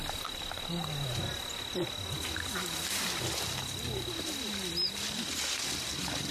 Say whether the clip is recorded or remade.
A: recorded